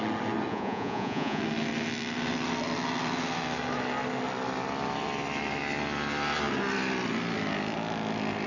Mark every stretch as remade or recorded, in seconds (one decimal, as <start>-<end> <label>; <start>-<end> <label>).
0.0-0.5 recorded; 0.5-1.4 remade; 1.4-8.5 recorded